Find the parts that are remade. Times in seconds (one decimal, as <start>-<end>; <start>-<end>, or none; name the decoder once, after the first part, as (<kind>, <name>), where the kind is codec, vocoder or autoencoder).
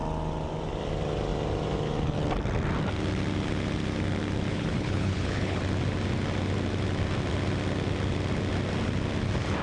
4.5-5.6 (codec, HILCodec)